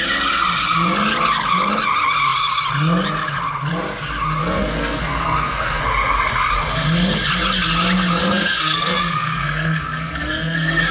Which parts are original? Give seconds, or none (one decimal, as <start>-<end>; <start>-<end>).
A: 0.0-4.4; 5.8-8.2